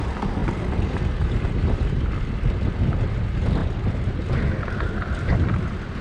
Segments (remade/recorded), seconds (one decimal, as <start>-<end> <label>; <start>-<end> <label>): 0.0-0.4 recorded; 0.4-2.1 remade; 2.1-6.0 recorded